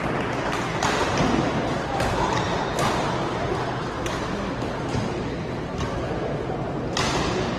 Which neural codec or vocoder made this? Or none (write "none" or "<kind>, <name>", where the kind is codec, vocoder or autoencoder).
none